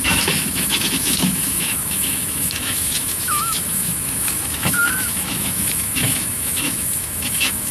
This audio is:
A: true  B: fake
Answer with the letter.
B